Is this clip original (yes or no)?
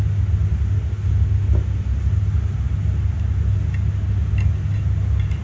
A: yes